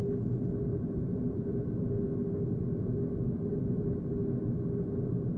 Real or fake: real